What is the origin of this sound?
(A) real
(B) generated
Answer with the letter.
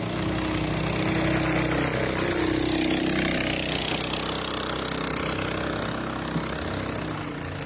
A